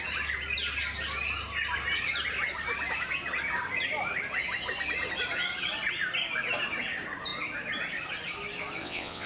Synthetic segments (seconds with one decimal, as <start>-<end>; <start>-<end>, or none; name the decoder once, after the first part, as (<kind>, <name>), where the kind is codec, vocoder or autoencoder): 8.8-9.3 (vocoder, WaveNeXt)